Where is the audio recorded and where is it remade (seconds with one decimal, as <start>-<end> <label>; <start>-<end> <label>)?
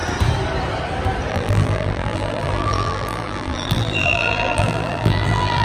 0.0-1.3 recorded; 1.3-5.6 remade